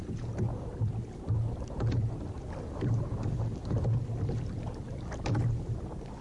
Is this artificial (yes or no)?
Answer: no